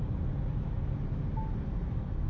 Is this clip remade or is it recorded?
recorded